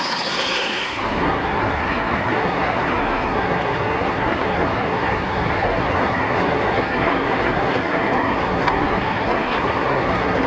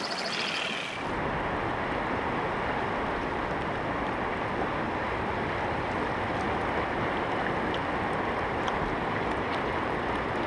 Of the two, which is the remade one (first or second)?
first